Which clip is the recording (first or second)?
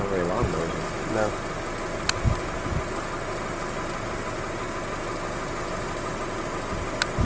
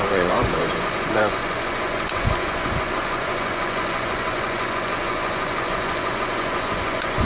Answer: first